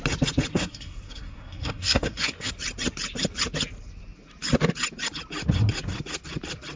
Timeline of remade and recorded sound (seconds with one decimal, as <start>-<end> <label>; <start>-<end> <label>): 0.0-0.5 recorded; 0.5-2.5 remade; 2.5-6.8 recorded

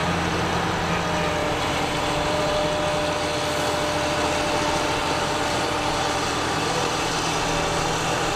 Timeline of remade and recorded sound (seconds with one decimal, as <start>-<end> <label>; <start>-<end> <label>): 0.0-0.8 remade; 0.8-1.4 recorded; 1.4-2.6 remade; 2.6-5.0 recorded; 5.0-7.1 remade; 7.1-8.4 recorded

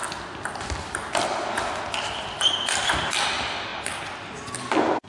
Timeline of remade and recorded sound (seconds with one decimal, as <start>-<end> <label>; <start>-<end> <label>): 0.0-5.1 recorded

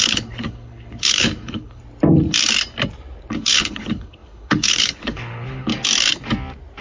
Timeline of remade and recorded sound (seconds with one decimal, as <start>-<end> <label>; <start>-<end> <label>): 0.0-1.8 remade; 1.8-3.3 recorded; 3.3-5.7 remade; 5.7-6.8 recorded

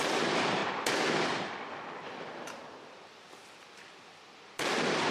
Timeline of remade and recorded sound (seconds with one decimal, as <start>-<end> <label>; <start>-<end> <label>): 0.0-0.6 remade; 0.6-2.2 recorded; 2.2-5.1 remade